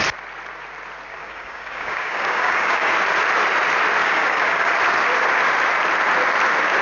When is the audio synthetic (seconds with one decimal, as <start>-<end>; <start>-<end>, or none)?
1.1-2.9; 4.0-4.7